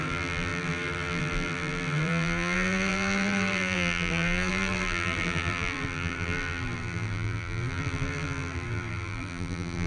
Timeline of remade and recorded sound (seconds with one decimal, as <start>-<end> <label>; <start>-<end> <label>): 0.0-9.9 remade